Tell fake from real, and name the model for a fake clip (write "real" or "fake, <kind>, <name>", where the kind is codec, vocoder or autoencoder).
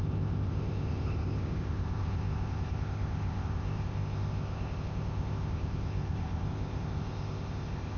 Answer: fake, codec, ZipCodec